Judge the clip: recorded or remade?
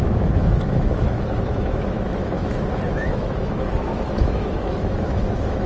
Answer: remade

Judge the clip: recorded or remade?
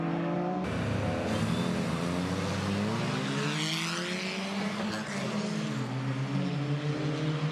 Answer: recorded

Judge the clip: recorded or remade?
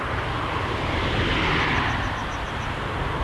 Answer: recorded